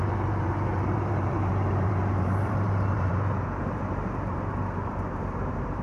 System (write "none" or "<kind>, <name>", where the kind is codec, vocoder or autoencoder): vocoder, BigVGAN v2